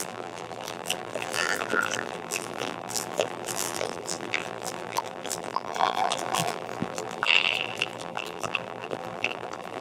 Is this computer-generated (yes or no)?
yes